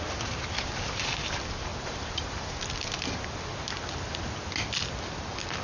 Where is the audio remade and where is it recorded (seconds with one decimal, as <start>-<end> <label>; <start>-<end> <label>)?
0.0-1.7 recorded; 1.7-2.6 remade; 2.6-5.6 recorded